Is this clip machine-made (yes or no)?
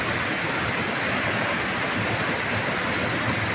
no